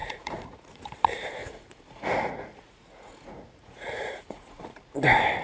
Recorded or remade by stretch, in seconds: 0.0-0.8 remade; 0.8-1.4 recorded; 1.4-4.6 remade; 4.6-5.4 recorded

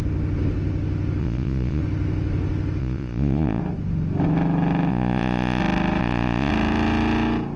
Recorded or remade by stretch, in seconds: 0.0-1.2 recorded; 1.2-1.8 remade; 1.8-2.8 recorded; 2.8-3.6 remade; 3.6-4.9 recorded; 4.9-5.6 remade; 5.6-6.0 recorded; 6.0-6.5 remade; 6.5-7.6 recorded

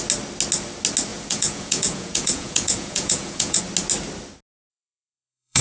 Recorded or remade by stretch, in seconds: 0.0-1.1 recorded; 1.1-3.6 remade; 3.6-4.7 recorded; 4.7-5.6 remade